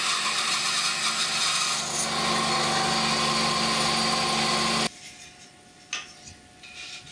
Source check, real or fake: real